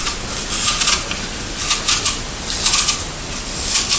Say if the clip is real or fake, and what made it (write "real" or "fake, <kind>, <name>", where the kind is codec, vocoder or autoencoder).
real